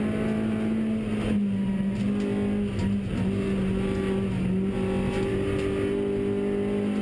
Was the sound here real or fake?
real